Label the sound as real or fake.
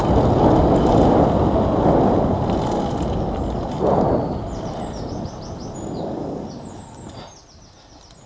real